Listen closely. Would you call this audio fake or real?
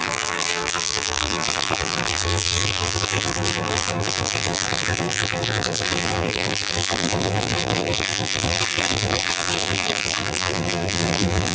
fake